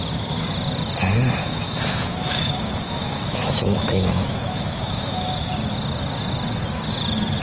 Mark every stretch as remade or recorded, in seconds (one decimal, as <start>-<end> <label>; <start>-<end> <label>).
0.0-1.4 recorded; 1.4-5.3 remade; 5.3-7.4 recorded